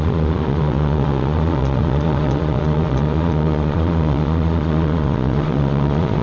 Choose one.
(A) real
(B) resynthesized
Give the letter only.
B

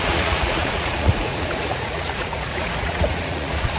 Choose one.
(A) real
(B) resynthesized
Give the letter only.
B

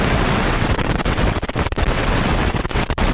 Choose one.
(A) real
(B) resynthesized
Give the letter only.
B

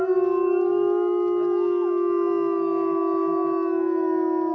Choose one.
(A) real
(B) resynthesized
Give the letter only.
A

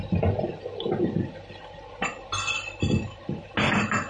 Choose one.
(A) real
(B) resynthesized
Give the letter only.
A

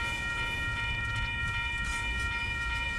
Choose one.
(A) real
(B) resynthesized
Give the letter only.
B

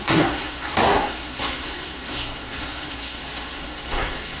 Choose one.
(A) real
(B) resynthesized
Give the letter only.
B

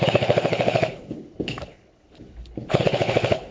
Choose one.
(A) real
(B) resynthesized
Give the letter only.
B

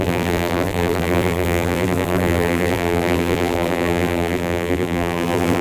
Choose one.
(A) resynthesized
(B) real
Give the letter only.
A